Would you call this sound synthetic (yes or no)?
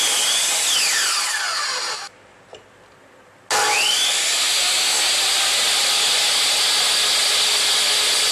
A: no